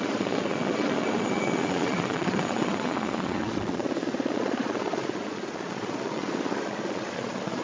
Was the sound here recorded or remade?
remade